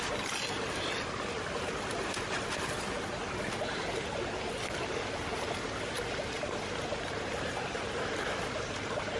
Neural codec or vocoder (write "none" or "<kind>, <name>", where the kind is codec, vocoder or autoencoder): none